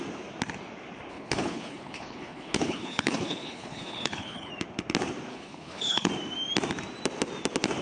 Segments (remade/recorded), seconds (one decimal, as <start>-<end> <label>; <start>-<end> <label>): 0.0-1.1 recorded; 1.1-4.5 remade; 4.5-5.3 recorded; 5.3-6.1 remade; 6.1-7.8 recorded

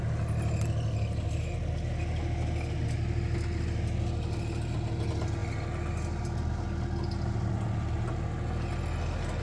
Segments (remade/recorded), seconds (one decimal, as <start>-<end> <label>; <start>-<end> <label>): 0.0-9.4 recorded